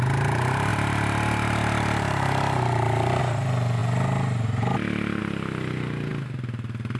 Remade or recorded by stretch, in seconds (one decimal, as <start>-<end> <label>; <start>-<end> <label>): 0.0-0.7 recorded; 0.7-3.2 remade; 3.2-7.0 recorded